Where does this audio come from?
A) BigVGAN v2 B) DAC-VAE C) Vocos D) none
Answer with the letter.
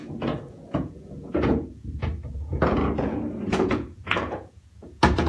C